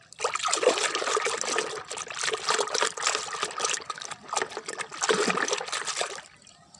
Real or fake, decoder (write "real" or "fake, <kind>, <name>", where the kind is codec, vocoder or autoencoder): real